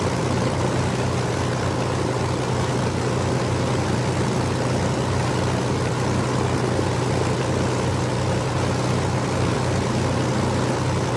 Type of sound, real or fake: real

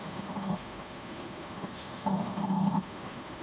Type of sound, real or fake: fake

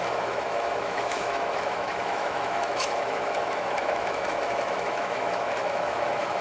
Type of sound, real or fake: fake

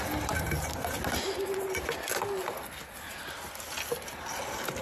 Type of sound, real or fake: real